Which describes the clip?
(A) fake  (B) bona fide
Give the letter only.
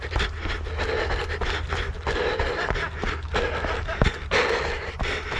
B